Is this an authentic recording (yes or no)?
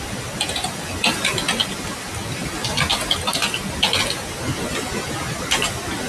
yes